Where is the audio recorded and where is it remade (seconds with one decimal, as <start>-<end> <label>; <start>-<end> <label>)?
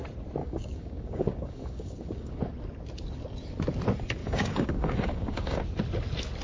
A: 0.0-0.4 recorded; 0.4-2.4 remade; 2.4-4.2 recorded; 4.2-5.6 remade; 5.6-6.4 recorded